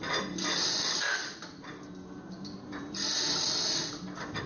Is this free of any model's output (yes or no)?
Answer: yes